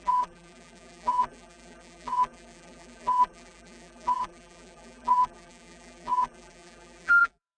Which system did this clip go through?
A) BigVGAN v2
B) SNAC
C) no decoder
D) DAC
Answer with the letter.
A